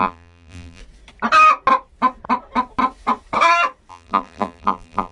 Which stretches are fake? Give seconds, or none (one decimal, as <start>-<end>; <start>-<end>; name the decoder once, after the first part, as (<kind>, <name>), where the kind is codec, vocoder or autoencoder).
0.0-0.8 (vocoder, BigVGAN v2); 3.9-5.1